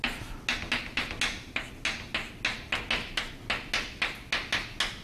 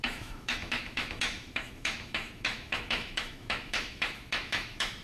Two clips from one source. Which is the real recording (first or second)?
first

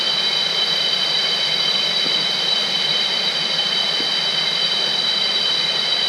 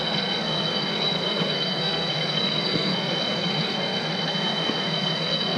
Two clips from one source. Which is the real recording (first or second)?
first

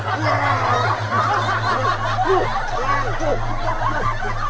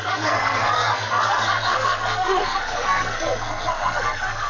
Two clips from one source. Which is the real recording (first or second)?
first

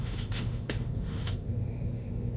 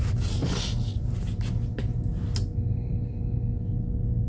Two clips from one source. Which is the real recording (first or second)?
second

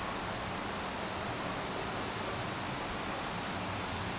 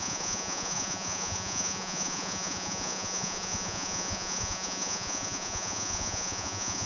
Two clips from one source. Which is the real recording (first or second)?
first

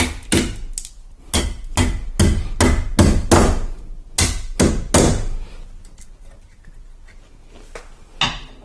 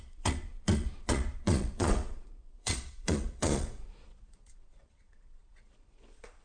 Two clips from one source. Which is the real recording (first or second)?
first